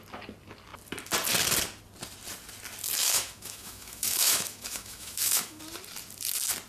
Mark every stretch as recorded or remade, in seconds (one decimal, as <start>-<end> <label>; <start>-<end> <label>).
0.0-3.0 recorded; 3.0-5.6 remade; 5.6-6.7 recorded